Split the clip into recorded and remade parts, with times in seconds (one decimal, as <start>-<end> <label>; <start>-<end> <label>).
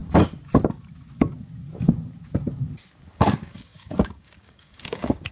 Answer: 0.0-3.2 recorded; 3.2-5.3 remade